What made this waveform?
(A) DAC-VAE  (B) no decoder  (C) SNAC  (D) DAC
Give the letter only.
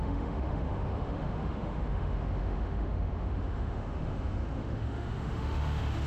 A